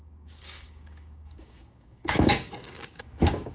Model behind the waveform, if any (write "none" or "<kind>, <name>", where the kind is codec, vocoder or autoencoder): codec, DAC